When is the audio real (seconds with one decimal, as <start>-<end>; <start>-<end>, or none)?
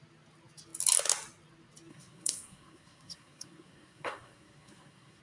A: 0.0-1.9